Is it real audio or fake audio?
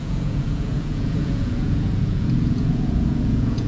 fake